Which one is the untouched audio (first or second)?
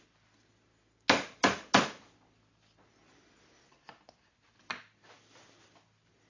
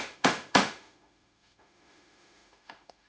first